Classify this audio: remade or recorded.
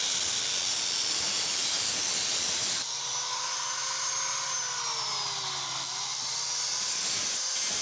recorded